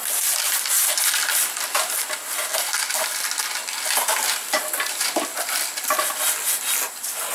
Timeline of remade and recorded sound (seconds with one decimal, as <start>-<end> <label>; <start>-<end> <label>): 0.0-7.3 recorded

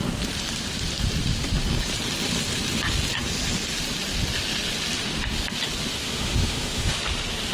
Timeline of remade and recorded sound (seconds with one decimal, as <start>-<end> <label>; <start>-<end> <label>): 0.0-5.9 recorded; 5.9-6.9 remade; 6.9-7.5 recorded